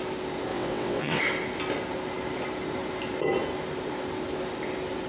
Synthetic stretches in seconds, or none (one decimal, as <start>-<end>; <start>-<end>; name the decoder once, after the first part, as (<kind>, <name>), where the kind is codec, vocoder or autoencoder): 0.5-1.2 (vocoder, WaveNeXt)